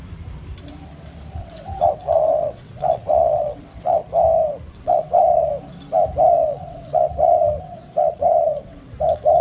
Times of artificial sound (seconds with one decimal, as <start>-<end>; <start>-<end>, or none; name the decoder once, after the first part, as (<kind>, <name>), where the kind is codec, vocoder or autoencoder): 1.4-4.0 (vocoder, WaveNeXt); 4.7-5.5; 6.3-9.4